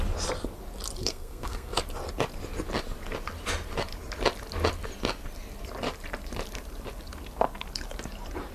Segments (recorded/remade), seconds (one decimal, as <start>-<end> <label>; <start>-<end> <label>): 0.0-1.0 recorded; 1.0-1.8 remade; 1.8-8.5 recorded